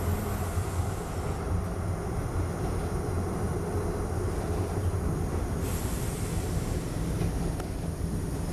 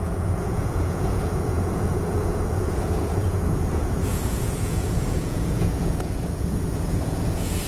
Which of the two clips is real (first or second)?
first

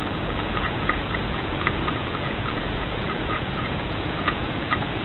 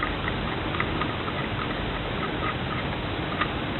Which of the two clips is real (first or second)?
second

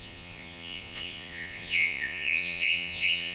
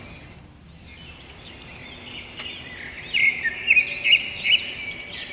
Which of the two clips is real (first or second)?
second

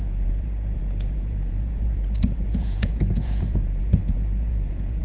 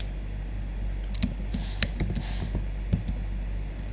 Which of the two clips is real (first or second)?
second